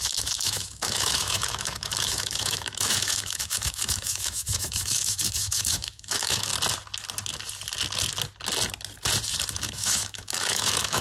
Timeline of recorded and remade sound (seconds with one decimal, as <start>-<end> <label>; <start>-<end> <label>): 0.0-6.5 remade; 6.5-9.5 recorded; 9.5-11.0 remade